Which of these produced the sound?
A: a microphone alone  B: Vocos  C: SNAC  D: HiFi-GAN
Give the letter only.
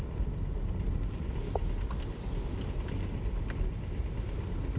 A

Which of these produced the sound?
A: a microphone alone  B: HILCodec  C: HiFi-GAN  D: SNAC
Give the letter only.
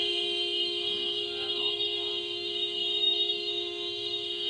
D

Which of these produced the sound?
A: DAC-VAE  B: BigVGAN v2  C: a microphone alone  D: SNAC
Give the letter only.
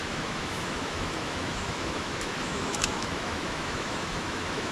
A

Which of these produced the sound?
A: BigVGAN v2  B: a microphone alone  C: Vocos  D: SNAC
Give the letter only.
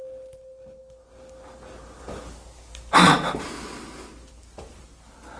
B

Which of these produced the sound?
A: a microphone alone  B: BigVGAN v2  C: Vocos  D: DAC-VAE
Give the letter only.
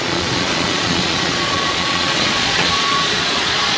C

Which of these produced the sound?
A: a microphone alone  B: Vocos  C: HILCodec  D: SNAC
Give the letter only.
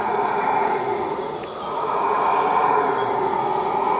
B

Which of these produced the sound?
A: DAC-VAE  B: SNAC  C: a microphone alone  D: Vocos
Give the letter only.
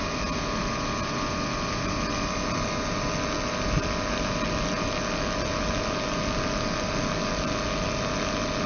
C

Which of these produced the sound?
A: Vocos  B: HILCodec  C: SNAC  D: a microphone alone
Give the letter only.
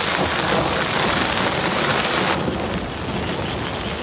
D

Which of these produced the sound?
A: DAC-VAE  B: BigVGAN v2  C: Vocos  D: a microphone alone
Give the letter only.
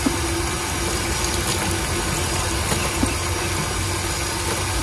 D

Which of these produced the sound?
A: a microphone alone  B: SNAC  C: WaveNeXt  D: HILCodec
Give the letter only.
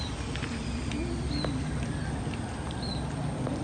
A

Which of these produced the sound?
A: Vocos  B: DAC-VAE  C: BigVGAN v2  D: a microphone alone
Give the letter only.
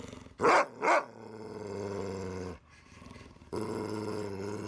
D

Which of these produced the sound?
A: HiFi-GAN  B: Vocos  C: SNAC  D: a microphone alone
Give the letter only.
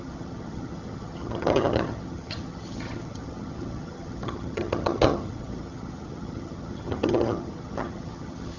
A